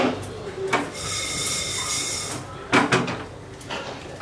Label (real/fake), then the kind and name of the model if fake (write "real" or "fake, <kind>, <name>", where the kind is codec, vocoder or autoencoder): real